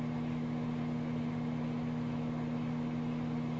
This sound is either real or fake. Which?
real